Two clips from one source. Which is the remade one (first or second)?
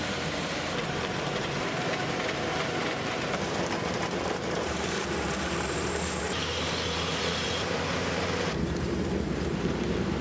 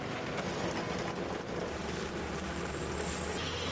first